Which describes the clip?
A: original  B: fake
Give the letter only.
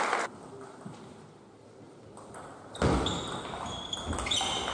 A